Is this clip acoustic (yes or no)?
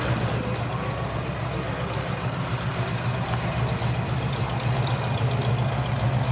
yes